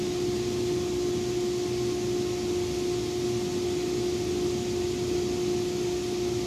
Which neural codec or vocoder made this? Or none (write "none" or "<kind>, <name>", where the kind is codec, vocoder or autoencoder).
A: none